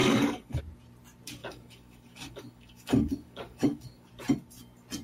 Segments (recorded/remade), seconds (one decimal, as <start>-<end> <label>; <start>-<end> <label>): 0.0-0.6 remade; 0.6-1.4 recorded; 1.4-4.1 remade; 4.1-5.0 recorded